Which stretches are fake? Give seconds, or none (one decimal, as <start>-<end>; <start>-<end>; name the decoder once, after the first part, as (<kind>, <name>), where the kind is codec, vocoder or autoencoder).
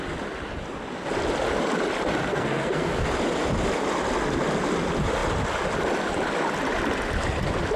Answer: 2.3-3.1 (codec, SNAC)